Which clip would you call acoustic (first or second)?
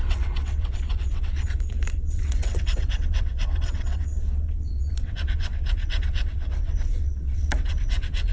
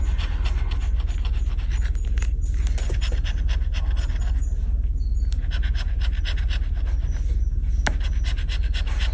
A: second